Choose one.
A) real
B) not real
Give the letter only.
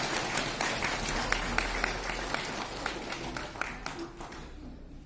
A